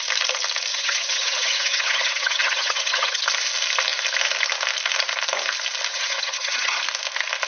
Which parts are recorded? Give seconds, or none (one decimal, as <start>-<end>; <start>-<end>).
0.0-0.7; 3.2-5.9; 6.8-7.5